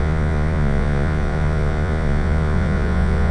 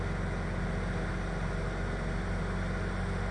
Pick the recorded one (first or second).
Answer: second